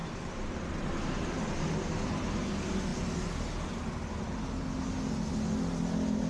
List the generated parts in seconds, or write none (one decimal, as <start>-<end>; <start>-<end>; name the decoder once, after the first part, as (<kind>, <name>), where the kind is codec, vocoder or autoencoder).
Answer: 0.0-1.2 (vocoder, BigVGAN v2)